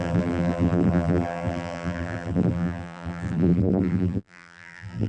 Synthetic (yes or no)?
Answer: yes